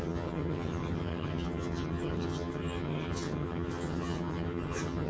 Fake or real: fake